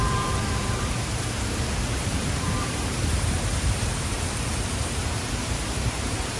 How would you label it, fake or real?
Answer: fake